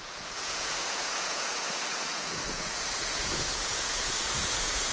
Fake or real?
fake